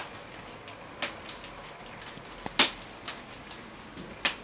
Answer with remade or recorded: recorded